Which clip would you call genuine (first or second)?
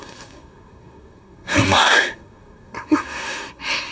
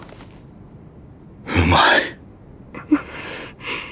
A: second